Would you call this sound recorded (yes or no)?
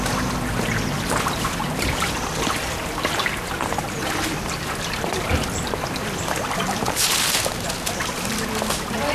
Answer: yes